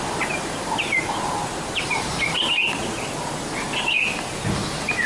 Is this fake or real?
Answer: real